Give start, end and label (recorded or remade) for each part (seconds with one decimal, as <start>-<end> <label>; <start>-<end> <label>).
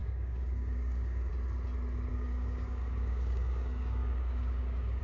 0.0-1.3 remade; 1.3-2.1 recorded; 2.1-5.0 remade